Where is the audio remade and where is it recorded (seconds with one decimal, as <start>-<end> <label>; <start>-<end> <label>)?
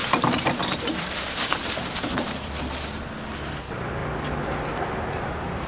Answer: 0.0-2.6 remade; 2.6-5.7 recorded